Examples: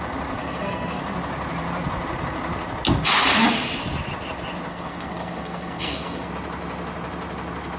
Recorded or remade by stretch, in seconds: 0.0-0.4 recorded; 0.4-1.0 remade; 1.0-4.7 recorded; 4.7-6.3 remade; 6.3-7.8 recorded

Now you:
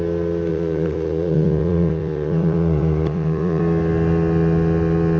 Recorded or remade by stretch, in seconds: 0.0-0.5 recorded; 0.5-3.6 remade; 3.6-5.2 recorded